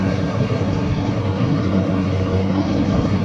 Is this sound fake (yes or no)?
yes